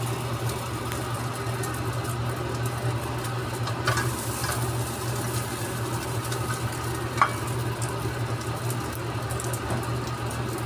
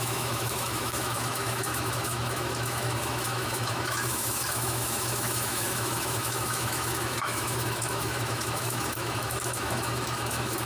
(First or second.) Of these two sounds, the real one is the first